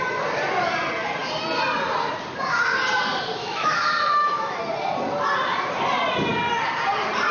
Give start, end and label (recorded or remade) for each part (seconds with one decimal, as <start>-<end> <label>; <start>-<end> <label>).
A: 0.0-3.4 recorded; 3.4-4.6 remade; 4.6-7.3 recorded